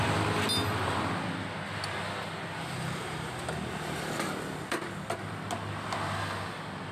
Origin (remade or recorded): recorded